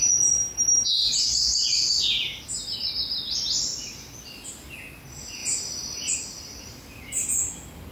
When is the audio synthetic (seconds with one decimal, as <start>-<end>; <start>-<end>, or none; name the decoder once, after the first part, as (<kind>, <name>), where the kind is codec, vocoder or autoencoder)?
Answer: none